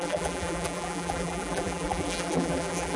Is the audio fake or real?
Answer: fake